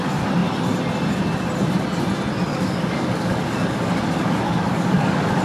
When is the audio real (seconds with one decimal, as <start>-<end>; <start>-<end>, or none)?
0.0-2.5